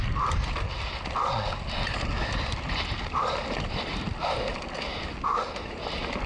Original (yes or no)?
yes